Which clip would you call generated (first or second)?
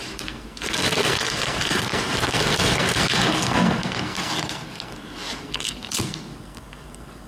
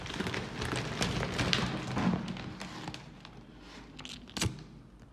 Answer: first